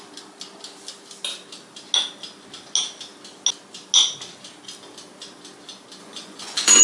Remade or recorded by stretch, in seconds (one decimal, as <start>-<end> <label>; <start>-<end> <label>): 0.0-6.0 recorded; 6.0-6.8 remade